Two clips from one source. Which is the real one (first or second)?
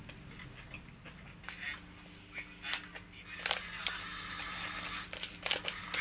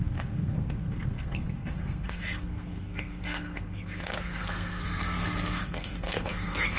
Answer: first